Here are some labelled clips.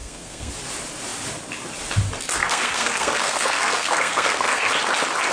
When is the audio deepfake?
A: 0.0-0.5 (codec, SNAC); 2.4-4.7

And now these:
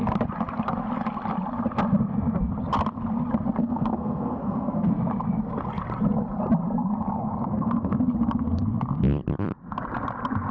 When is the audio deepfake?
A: 3.6-4.9 (codec, SNAC); 7.5-8.0

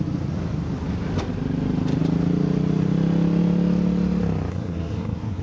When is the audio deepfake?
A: 4.5-5.4 (codec, SNAC)

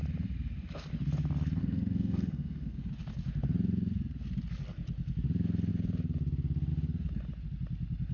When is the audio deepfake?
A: 1.6-2.9 (codec, SNAC)